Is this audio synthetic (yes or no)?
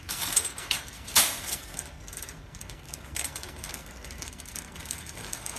yes